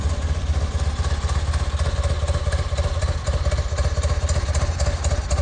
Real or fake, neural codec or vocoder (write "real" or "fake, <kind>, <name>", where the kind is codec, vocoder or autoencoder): real